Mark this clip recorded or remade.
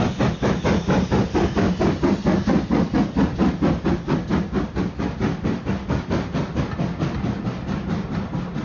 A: recorded